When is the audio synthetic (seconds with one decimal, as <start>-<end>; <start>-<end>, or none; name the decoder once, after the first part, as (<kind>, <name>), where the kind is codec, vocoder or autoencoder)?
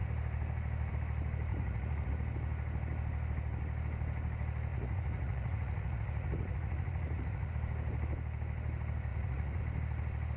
1.5-2.1 (vocoder, Vocos); 4.7-7.5; 9.1-9.6